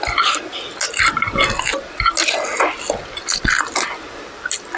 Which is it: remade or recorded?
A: recorded